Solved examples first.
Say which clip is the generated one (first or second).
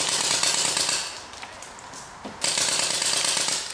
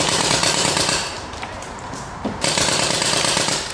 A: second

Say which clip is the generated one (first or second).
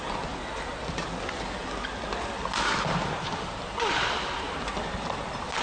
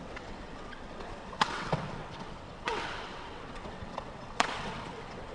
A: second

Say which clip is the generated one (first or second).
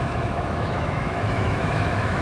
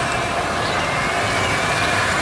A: first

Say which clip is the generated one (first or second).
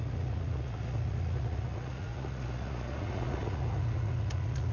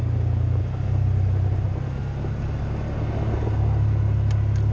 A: first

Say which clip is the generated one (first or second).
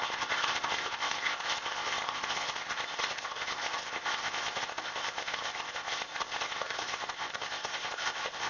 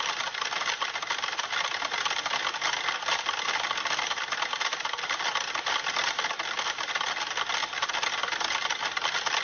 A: first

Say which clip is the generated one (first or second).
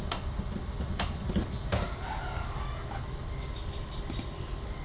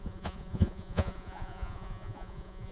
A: second